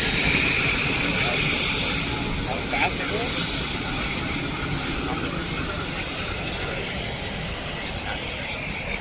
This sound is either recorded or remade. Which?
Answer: recorded